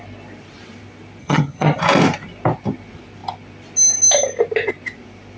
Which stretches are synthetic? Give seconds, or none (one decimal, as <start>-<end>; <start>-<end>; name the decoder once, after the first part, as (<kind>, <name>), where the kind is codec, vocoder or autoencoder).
1.2-1.8 (vocoder, HiFi-GAN)

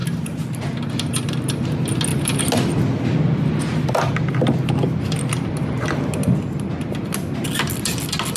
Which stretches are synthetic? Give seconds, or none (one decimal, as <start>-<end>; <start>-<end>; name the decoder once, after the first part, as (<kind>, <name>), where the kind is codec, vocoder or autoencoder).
none

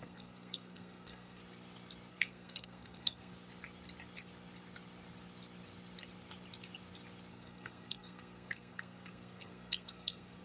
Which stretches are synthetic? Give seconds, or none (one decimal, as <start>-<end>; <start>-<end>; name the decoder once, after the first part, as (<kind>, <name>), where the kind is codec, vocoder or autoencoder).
0.0-1.4 (codec, SNAC); 2.1-3.3; 7.3-10.4

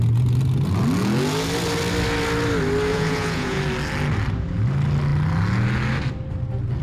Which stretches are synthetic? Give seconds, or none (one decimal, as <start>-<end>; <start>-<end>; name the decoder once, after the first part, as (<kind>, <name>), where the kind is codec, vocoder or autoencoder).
2.9-3.6 (vocoder, Vocos)

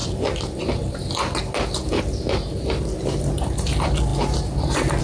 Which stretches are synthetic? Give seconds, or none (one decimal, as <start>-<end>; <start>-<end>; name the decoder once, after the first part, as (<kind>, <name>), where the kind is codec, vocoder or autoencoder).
3.0-4.1 (vocoder, BigVGAN v2)

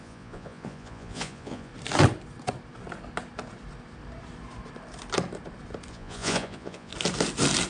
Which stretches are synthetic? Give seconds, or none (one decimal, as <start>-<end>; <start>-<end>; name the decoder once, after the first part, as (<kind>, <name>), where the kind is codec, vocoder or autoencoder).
0.0-1.7 (vocoder, Vocos); 5.9-6.9

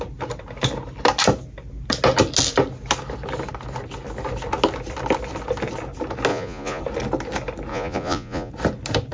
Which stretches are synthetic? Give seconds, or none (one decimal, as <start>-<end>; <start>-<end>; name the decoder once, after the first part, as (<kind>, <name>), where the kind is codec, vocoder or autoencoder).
6.3-6.8 (vocoder, Vocos); 7.7-8.5